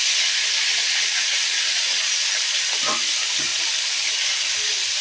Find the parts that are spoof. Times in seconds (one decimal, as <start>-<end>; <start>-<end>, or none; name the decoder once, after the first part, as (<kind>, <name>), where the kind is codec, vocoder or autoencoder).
0.8-2.1 (vocoder, WaveNeXt)